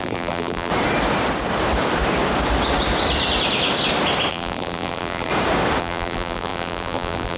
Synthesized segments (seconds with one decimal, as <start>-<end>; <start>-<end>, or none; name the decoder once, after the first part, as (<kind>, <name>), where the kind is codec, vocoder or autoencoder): 0.0-0.7 (vocoder, BigVGAN v2); 4.3-5.3; 5.8-7.4